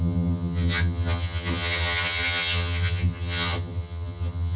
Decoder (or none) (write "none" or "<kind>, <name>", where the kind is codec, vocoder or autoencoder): vocoder, HiFi-GAN